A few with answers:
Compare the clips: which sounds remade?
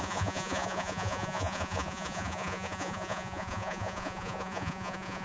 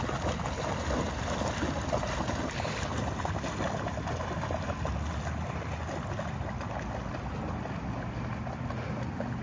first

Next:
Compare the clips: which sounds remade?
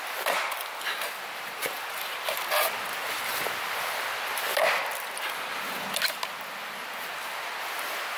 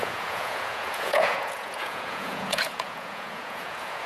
second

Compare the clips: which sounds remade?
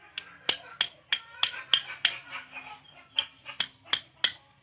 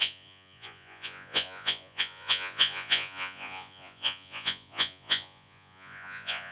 second